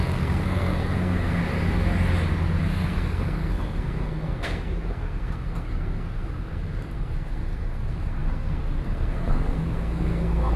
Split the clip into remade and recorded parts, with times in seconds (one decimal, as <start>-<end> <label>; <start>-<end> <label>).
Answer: 0.0-1.4 remade; 1.4-2.6 recorded; 2.6-10.6 remade